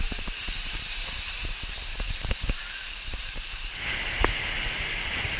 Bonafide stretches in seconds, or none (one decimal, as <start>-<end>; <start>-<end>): 0.0-1.9